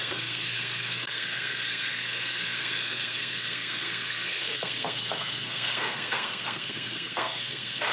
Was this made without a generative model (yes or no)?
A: no